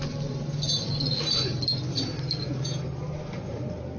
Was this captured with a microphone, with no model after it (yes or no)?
yes